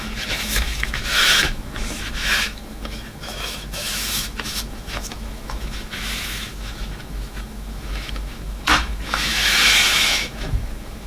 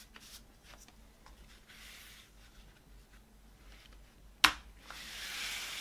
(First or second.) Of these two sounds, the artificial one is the first